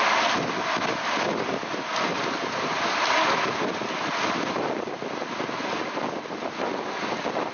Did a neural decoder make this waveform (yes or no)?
no